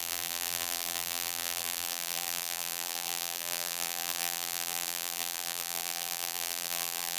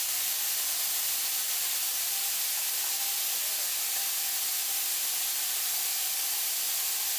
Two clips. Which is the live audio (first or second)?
second